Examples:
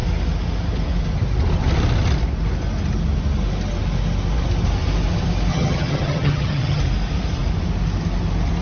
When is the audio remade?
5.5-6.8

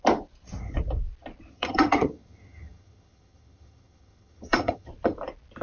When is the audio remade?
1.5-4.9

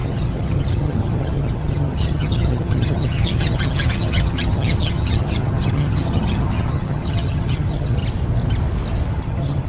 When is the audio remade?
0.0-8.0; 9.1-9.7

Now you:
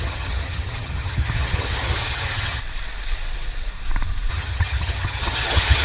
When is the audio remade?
0.0-2.6; 4.3-5.8